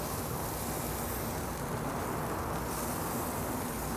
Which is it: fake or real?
real